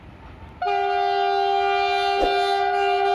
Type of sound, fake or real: real